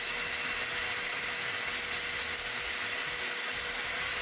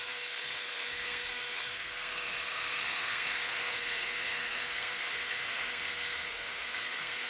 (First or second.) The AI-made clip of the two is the second